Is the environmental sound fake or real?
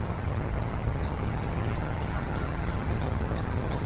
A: fake